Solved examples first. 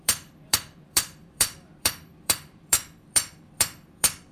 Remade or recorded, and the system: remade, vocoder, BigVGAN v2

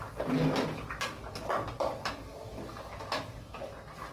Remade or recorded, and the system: recorded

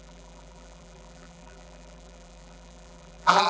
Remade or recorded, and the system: remade, vocoder, BigVGAN v2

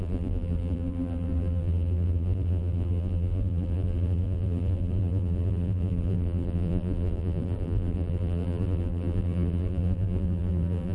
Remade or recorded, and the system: remade, vocoder, BigVGAN v2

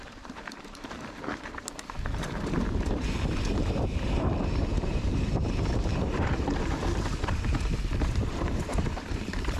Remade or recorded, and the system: remade, vocoder, BigVGAN v2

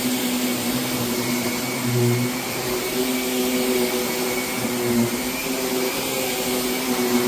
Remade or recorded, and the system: recorded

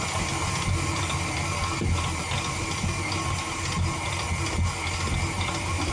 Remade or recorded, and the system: recorded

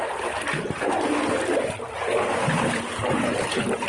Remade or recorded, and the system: remade, vocoder, BigVGAN v2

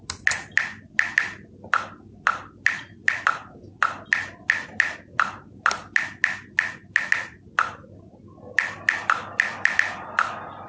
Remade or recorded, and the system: recorded